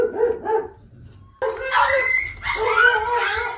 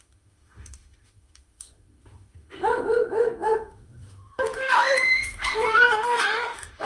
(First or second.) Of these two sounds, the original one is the first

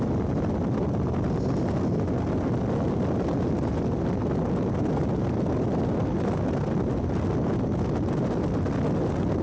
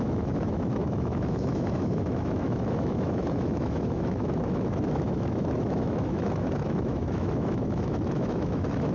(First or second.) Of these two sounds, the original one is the first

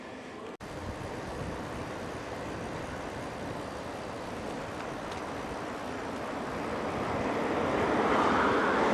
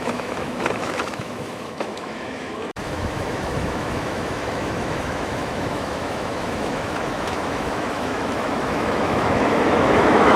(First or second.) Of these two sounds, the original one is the first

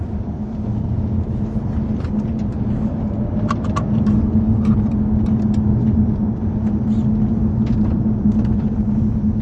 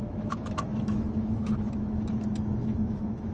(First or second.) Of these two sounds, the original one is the first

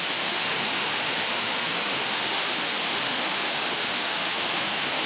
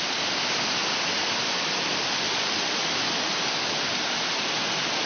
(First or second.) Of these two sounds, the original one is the second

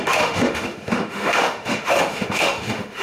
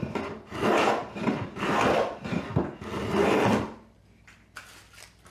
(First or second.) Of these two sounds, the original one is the second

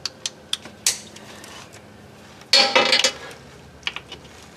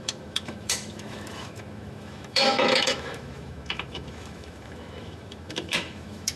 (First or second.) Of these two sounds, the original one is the first